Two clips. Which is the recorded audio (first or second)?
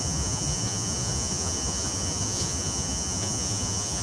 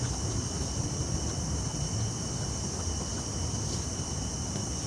second